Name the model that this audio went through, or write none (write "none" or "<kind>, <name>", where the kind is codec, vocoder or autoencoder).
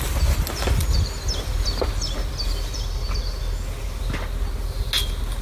none